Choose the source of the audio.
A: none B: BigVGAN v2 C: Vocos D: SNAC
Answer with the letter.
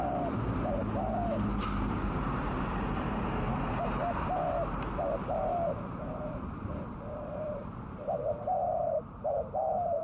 B